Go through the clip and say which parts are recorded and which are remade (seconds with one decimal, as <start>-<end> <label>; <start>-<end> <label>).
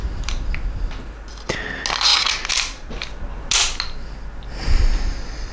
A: 0.0-5.5 recorded